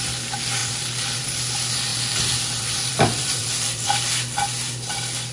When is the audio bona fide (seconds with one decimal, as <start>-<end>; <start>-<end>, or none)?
0.0-0.6; 1.2-1.9; 4.1-5.3